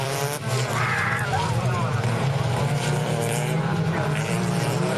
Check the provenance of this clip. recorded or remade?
remade